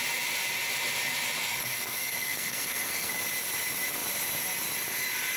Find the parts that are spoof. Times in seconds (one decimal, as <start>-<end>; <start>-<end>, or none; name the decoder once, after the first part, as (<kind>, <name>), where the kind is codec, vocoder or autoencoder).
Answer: 1.4-3.1 (codec, SNAC)